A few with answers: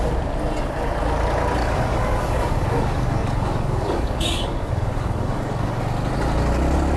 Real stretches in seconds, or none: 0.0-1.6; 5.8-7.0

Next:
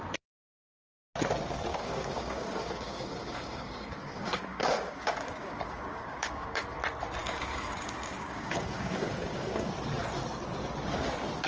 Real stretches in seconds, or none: 0.0-1.7; 6.8-7.2; 9.7-11.5

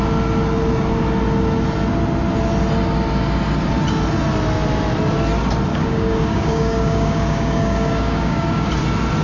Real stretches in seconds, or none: 0.0-5.7; 8.7-9.2

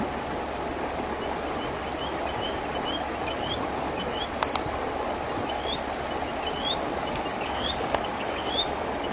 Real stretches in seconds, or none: 0.0-7.3; 8.5-9.1

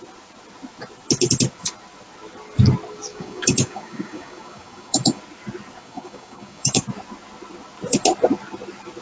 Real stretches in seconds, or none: 0.0-3.1; 5.2-5.8; 6.8-9.0